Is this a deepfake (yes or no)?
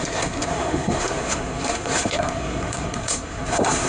yes